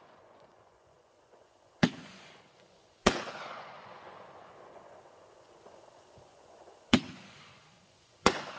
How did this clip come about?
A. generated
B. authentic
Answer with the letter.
A